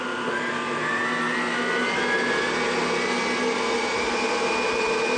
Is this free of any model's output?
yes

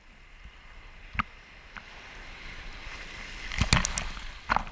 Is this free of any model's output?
yes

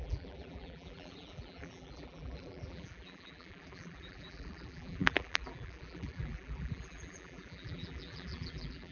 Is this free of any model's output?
no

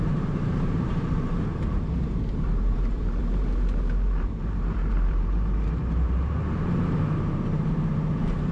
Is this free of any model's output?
no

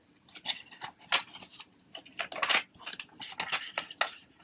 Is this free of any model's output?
yes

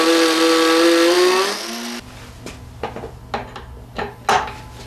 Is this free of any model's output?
yes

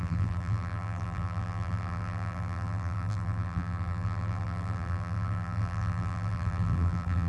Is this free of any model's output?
no